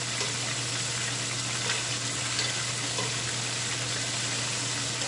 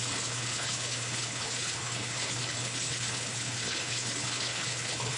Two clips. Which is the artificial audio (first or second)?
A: second